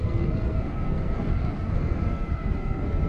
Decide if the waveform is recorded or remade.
remade